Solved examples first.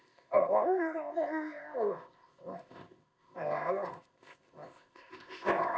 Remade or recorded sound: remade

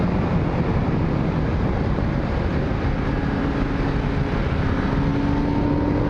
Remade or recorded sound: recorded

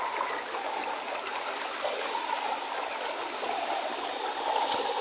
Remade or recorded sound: recorded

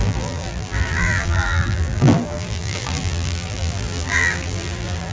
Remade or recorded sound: remade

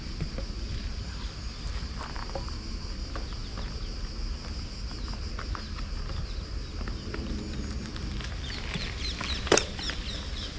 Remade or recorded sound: recorded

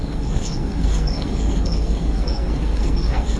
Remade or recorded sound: remade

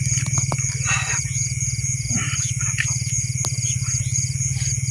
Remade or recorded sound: recorded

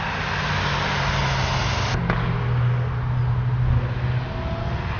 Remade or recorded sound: recorded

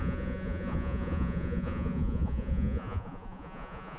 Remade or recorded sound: remade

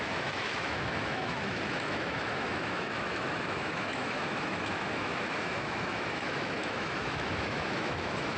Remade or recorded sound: remade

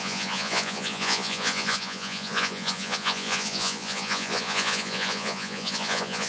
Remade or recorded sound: remade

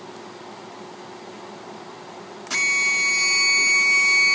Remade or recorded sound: recorded